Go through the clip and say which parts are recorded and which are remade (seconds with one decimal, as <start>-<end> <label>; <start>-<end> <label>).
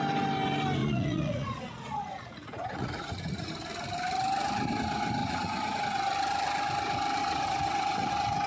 0.0-0.8 recorded; 0.8-3.5 remade; 3.5-5.2 recorded; 5.2-5.8 remade; 5.8-7.2 recorded; 7.2-8.1 remade; 8.1-8.5 recorded